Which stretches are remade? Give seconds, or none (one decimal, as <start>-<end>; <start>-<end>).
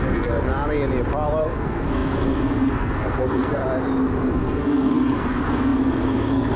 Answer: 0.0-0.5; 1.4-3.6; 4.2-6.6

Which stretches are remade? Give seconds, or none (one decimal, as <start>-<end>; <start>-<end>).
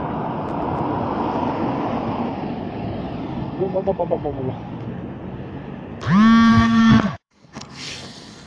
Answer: 3.4-4.5; 6.5-8.5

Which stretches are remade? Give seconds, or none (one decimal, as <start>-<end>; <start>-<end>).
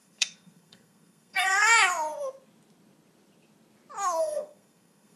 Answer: 0.0-1.7; 4.2-5.2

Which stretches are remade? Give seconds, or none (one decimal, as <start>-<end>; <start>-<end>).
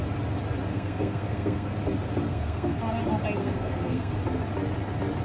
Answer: 0.7-1.7; 2.3-2.8; 3.4-4.2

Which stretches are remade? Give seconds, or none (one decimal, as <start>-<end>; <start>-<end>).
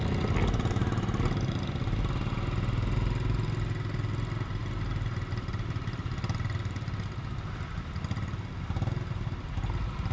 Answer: none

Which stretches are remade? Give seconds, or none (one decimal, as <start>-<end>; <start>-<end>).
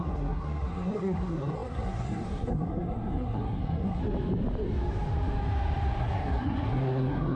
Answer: 0.0-4.0; 6.0-7.4